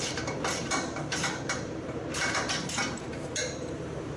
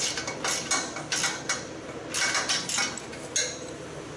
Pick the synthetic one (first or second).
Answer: first